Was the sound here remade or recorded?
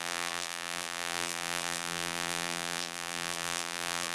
remade